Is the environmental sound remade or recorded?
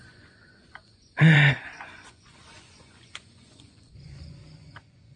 remade